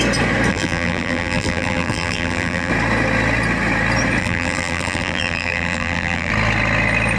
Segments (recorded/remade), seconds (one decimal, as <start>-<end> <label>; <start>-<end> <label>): 0.0-0.5 recorded; 0.5-2.7 remade; 2.7-4.2 recorded; 4.2-6.3 remade; 6.3-7.2 recorded